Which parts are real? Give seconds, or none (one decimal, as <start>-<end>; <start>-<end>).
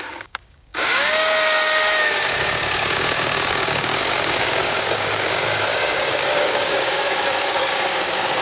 none